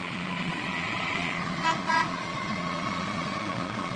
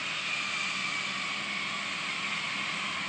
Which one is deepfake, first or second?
first